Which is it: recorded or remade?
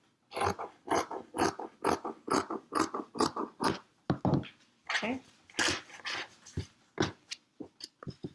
recorded